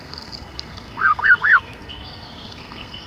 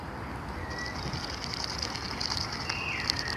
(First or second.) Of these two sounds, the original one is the second